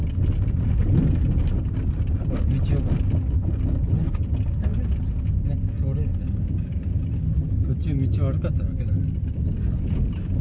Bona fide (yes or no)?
yes